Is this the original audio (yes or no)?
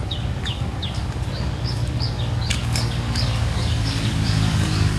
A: no